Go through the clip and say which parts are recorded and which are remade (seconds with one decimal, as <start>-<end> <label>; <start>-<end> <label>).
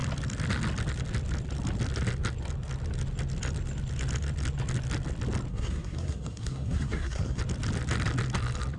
0.0-5.5 recorded; 5.5-7.4 remade; 7.4-8.8 recorded